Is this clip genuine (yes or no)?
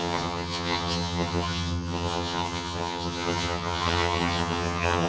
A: no